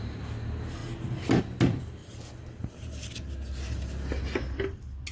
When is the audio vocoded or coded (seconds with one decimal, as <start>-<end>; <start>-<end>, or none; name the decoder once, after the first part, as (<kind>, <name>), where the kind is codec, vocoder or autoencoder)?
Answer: none